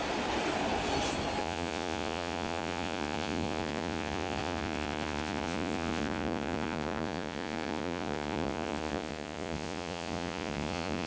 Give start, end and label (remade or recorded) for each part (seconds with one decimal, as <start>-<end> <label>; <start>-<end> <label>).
0.0-1.4 recorded; 1.4-11.1 remade